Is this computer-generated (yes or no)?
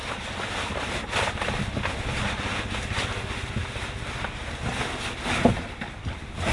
no